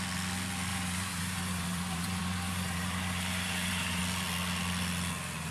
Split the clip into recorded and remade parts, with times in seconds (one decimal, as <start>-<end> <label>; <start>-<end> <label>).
0.0-0.7 recorded; 0.7-4.0 remade; 4.0-5.5 recorded